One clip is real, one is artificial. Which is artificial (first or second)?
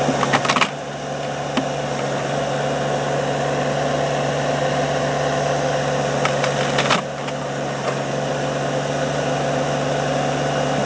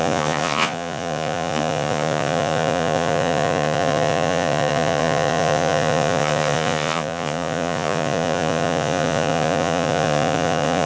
second